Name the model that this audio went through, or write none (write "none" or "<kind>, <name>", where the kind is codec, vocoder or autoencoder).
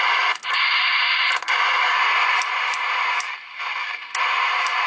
none